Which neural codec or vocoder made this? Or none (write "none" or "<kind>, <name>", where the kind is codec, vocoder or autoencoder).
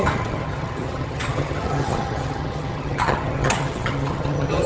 vocoder, HiFi-GAN